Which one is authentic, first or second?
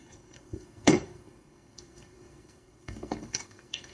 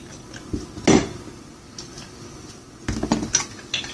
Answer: second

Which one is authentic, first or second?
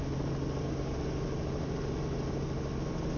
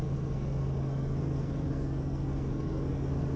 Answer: first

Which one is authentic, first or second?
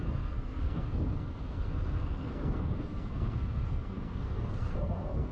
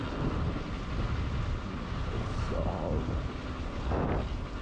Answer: second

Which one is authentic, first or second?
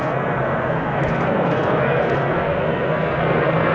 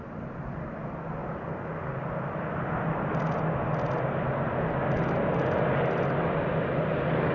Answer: second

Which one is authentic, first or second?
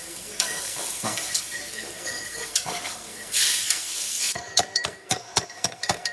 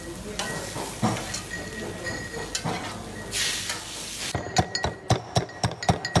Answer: second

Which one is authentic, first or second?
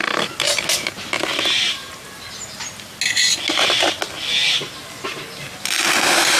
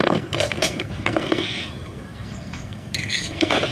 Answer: first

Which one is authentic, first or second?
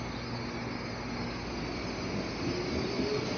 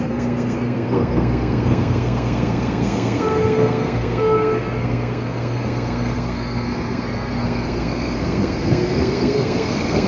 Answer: first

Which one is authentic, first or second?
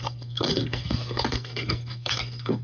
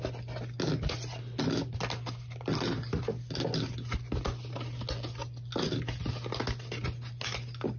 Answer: second